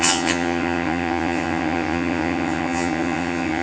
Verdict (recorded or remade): remade